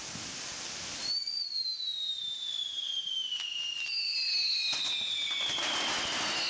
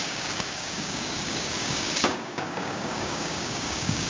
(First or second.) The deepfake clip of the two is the second